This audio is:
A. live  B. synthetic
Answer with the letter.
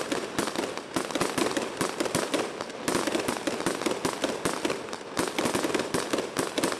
A